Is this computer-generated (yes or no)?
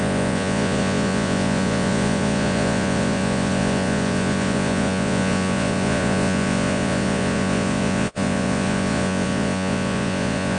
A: yes